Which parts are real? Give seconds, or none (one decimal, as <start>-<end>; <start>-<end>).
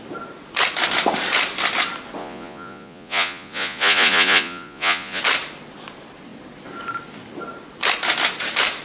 0.0-2.2; 5.2-8.8